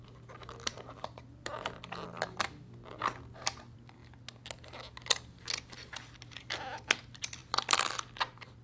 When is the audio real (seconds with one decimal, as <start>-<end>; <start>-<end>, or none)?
0.0-8.6